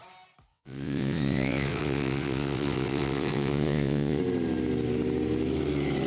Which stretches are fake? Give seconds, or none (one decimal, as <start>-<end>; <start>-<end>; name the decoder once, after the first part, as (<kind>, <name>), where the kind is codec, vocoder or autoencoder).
0.5-4.2 (vocoder, WaveNeXt)